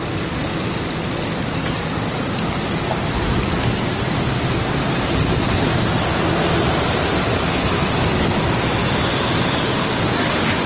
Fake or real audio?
real